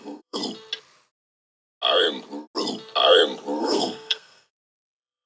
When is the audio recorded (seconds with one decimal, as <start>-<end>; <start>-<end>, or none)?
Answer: 0.4-3.6